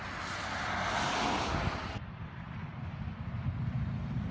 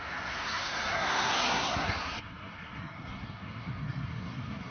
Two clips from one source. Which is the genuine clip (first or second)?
first